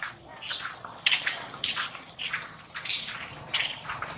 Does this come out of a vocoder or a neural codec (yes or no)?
no